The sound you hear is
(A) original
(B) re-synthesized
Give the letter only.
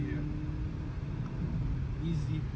A